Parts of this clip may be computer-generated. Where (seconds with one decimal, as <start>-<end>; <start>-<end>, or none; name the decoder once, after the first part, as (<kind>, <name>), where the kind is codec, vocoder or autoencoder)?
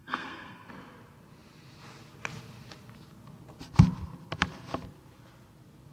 0.0-0.7 (codec, SNAC)